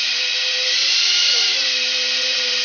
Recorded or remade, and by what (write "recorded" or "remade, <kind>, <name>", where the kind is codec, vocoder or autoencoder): remade, vocoder, BigVGAN v2